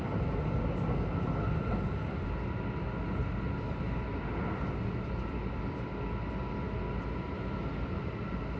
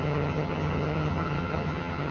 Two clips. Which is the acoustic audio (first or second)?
first